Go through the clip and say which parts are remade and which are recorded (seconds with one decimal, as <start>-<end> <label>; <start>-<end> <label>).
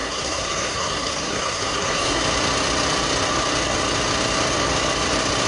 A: 0.0-2.2 remade; 2.2-5.5 recorded